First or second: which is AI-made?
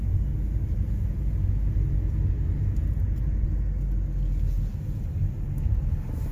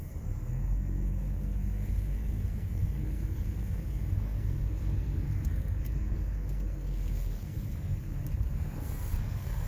second